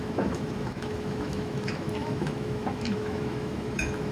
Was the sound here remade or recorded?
remade